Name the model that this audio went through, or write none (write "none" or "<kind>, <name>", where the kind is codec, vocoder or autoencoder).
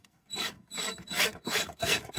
codec, SNAC